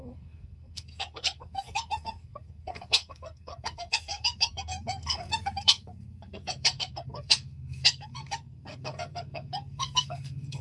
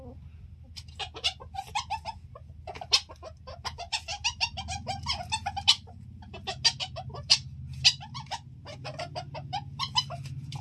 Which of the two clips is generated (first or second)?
first